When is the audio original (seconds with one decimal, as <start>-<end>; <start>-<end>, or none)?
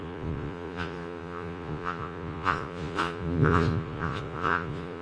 none